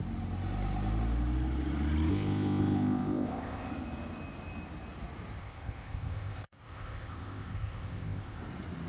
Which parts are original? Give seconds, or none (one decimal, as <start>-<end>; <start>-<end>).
0.0-2.1; 3.7-5.4; 8.4-8.9